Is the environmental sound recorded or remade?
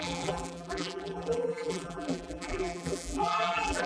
remade